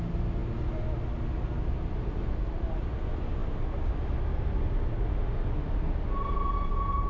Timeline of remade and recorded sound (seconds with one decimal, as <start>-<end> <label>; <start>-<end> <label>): 0.0-7.1 recorded